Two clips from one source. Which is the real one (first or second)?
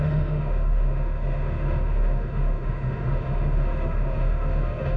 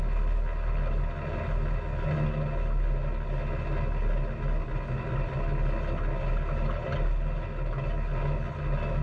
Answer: second